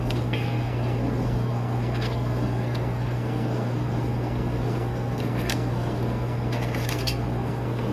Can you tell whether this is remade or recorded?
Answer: remade